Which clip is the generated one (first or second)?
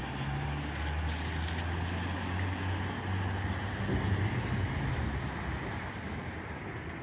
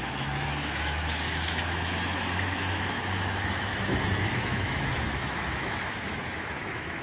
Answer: second